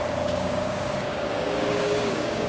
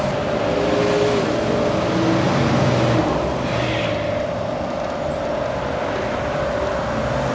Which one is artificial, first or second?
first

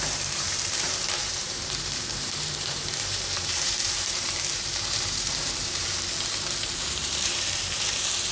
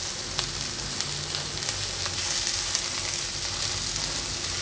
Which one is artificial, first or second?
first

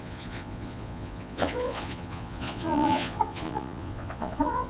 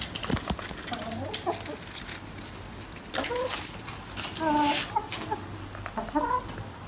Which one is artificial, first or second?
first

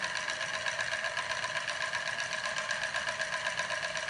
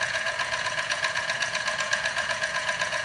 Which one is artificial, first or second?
second